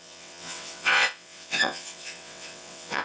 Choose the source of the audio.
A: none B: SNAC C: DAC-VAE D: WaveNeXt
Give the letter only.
D